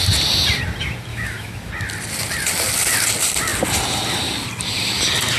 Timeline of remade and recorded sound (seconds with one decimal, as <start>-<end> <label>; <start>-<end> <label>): 0.0-1.1 recorded; 1.1-1.7 remade; 1.7-5.4 recorded